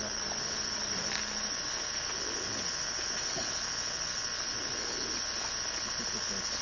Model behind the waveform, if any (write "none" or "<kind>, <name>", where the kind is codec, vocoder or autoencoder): none